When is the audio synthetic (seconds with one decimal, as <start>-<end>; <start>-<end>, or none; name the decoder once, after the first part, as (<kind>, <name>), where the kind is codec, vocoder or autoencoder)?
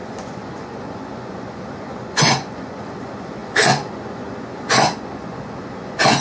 0.0-6.2 (vocoder, Vocos)